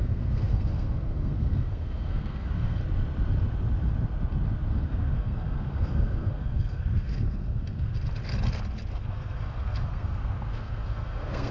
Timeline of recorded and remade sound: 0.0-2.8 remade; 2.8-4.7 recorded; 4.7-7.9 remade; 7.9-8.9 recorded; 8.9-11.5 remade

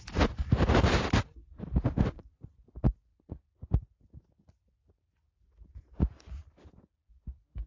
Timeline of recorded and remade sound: 0.0-3.1 remade; 3.1-7.1 recorded; 7.1-7.7 remade

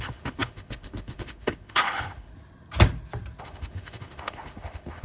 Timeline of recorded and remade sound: 0.0-2.3 remade; 2.3-3.4 recorded; 3.4-5.0 remade